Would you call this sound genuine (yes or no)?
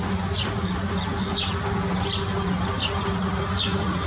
yes